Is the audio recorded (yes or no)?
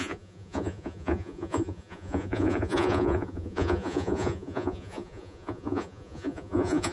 no